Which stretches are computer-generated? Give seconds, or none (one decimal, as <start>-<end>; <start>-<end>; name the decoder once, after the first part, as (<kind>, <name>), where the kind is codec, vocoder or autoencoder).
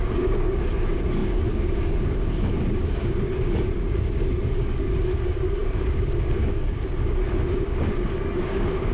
0.0-8.9 (codec, DAC)